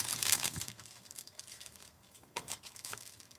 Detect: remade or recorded remade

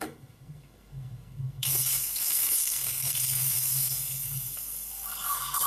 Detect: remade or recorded remade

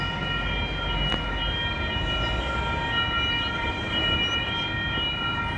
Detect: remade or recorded recorded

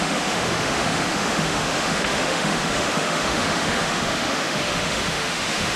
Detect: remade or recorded remade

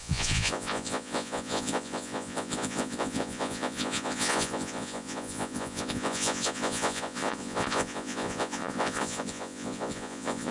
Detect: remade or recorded remade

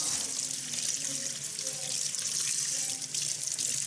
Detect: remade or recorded recorded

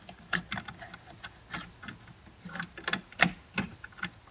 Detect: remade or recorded recorded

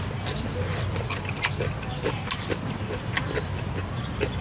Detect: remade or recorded recorded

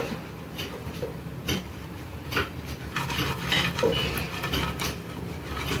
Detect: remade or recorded recorded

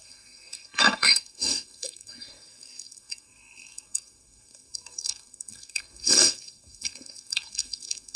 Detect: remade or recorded remade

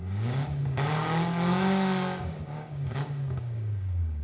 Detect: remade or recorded remade